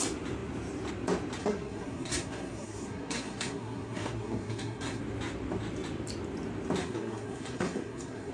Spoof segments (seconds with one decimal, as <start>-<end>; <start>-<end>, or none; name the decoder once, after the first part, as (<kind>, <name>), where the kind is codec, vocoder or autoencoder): 1.4-5.0 (codec, SNAC); 6.8-8.3